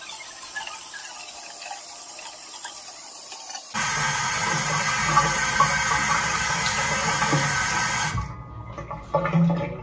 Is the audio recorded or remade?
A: recorded